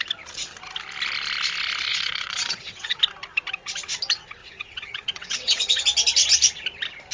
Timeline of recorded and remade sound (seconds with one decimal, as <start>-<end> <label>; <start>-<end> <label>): 0.0-1.9 recorded; 1.9-3.0 remade; 3.0-4.4 recorded; 4.4-5.8 remade; 5.8-7.1 recorded